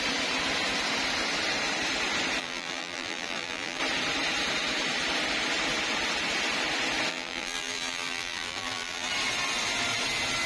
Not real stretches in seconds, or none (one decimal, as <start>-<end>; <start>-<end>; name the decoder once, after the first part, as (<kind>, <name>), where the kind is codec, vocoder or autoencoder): 2.4-3.8 (vocoder, BigVGAN v2); 7.1-9.1